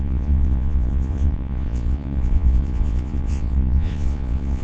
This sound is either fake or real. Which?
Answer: fake